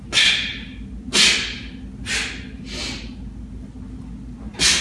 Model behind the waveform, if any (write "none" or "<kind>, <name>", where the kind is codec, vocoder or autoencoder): none